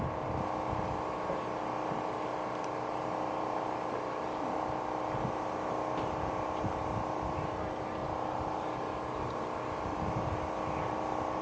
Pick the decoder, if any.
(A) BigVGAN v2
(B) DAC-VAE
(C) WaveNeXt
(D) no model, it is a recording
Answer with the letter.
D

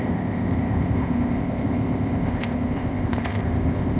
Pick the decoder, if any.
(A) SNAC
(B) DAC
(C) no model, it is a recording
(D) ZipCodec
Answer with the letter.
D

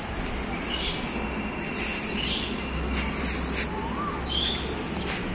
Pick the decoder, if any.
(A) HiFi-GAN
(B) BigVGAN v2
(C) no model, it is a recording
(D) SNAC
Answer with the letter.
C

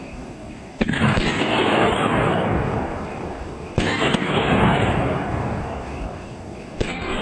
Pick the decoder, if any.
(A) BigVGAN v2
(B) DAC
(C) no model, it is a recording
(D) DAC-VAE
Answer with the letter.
B